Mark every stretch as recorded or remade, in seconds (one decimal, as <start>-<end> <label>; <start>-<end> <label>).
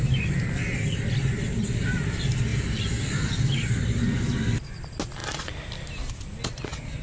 0.0-7.0 recorded